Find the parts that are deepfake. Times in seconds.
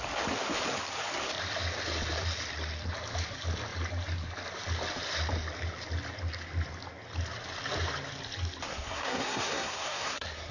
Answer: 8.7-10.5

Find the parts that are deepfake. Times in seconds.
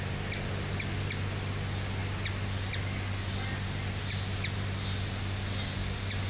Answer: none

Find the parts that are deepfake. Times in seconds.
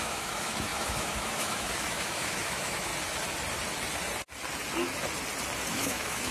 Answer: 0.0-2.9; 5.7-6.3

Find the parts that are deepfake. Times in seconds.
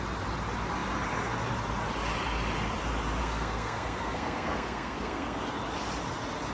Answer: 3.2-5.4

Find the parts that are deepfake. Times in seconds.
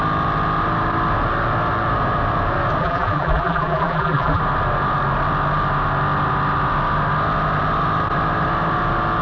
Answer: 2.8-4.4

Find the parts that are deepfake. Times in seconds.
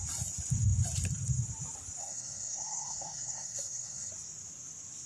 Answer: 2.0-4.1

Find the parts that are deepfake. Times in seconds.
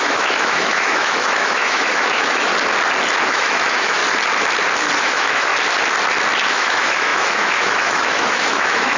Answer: 0.0-2.5; 3.2-4.0; 5.0-5.5; 6.5-9.0